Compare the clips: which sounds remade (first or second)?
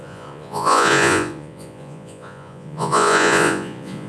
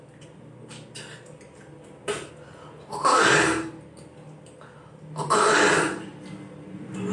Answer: first